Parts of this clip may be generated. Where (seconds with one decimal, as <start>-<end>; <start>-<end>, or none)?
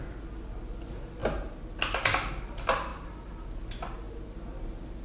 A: none